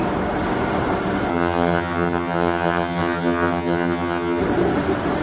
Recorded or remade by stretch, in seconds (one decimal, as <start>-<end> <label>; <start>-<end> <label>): 0.0-1.3 recorded; 1.3-4.4 remade; 4.4-5.2 recorded